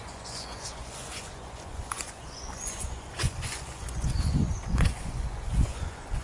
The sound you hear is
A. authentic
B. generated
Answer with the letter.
B